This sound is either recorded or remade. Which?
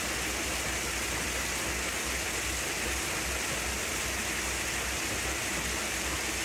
recorded